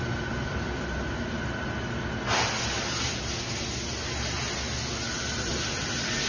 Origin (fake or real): real